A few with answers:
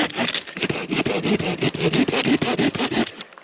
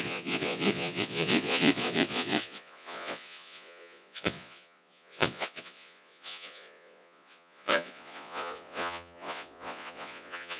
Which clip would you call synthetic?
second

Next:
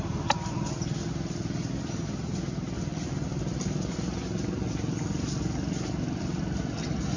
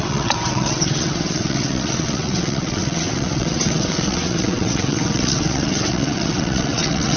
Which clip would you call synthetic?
second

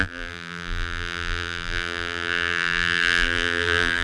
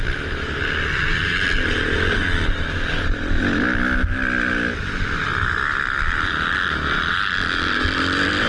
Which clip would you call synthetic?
first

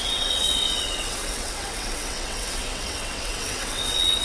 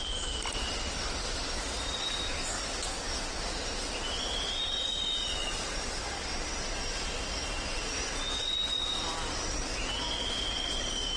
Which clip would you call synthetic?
first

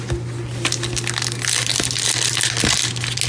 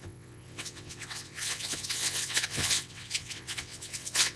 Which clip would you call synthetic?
second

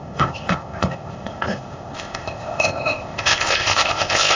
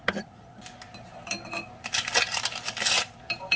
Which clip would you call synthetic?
first